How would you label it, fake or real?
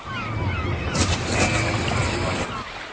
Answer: real